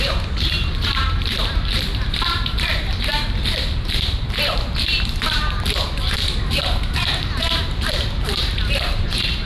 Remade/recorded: remade